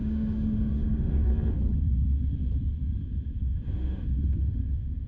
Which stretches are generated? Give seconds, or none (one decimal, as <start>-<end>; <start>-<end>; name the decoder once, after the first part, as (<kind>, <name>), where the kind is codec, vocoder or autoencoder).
0.0-1.3 (autoencoder, DAC-VAE); 3.0-5.1